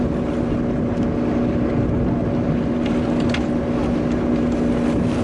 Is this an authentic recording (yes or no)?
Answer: yes